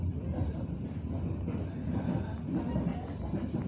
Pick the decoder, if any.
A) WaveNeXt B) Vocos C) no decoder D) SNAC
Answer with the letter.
C